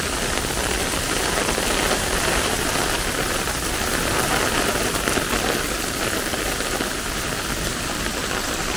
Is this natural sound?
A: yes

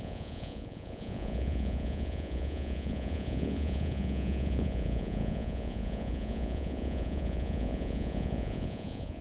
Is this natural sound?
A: no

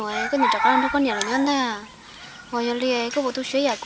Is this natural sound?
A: yes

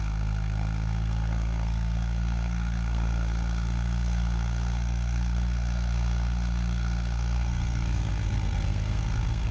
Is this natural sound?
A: no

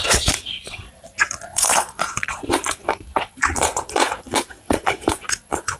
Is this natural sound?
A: no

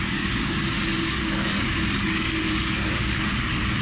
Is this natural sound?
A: no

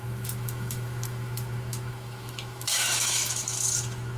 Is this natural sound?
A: no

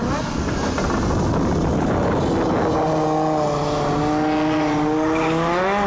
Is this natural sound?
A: yes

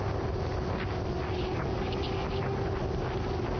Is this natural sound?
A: yes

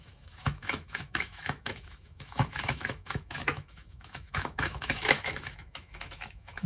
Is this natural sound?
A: no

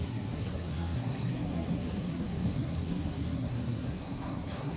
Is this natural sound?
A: no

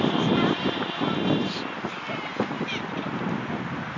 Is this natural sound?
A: yes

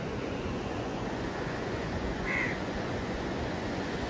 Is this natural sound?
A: no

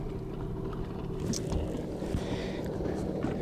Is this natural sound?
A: yes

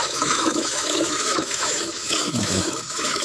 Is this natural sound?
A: no